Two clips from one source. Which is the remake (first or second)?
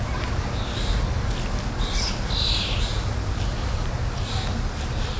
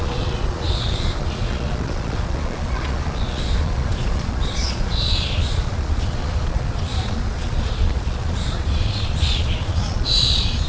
second